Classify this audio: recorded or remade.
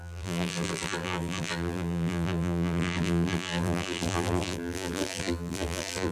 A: remade